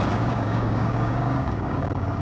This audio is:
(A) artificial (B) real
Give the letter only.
A